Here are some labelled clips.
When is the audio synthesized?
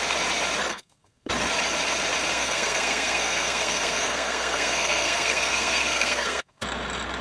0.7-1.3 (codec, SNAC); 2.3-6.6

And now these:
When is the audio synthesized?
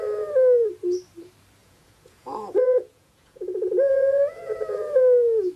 1.6-5.0 (vocoder, Vocos)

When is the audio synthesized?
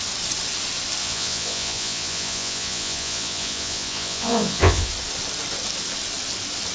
1.0-4.9 (vocoder, Vocos)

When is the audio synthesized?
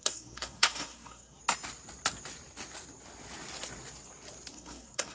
0.0-1.4 (codec, SNAC); 4.5-5.1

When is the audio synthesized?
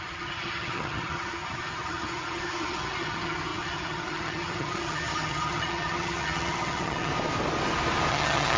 0.0-7.1 (vocoder, HiFi-GAN); 8.1-8.6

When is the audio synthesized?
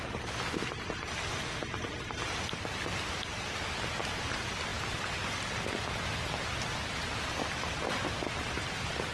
none